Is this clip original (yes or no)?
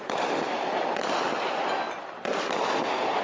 yes